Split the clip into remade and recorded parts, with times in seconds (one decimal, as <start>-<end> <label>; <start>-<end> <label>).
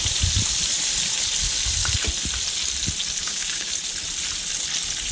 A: 0.0-3.2 recorded; 3.2-3.7 remade; 3.7-5.1 recorded